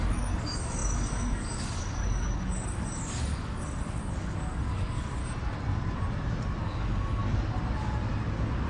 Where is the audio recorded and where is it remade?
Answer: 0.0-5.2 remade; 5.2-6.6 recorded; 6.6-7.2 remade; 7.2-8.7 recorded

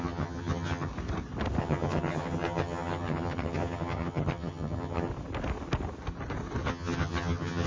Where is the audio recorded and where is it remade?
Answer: 0.0-0.9 remade; 0.9-1.6 recorded; 1.6-5.1 remade; 5.1-6.7 recorded; 6.7-7.7 remade

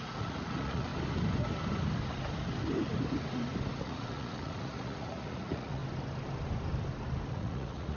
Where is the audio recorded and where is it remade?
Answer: 0.0-0.9 remade; 0.9-3.8 recorded; 3.8-5.8 remade; 5.8-7.3 recorded; 7.3-8.0 remade

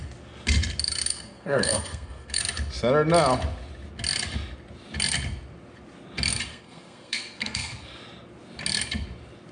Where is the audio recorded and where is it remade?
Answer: 0.0-1.1 recorded; 1.1-2.4 remade; 2.4-6.5 recorded; 6.5-8.0 remade; 8.0-9.5 recorded

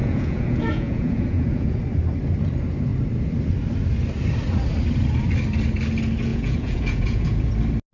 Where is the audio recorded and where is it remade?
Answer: 0.0-1.8 remade; 1.8-6.3 recorded; 6.3-7.5 remade; 7.5-7.9 recorded

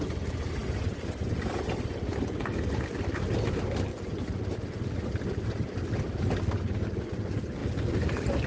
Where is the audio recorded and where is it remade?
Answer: 0.0-8.5 recorded